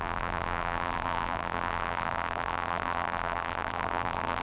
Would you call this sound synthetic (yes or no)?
yes